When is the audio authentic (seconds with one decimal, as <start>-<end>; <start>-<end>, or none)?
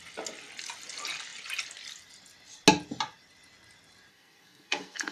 0.0-4.1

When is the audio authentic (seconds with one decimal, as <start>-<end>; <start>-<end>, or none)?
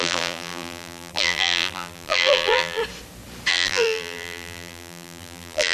2.8-3.5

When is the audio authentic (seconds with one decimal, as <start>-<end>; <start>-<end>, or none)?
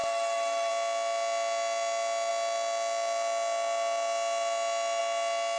0.7-5.6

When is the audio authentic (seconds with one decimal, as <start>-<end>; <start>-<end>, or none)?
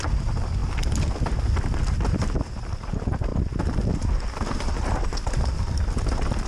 0.6-2.1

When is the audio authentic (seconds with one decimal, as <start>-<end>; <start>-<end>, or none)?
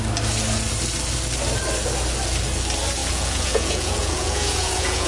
0.0-3.0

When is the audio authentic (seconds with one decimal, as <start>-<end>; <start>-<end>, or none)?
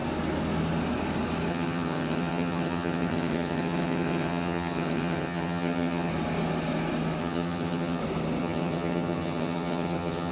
0.0-1.5; 6.1-7.2; 8.0-8.4